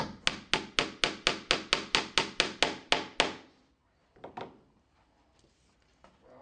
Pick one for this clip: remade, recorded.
recorded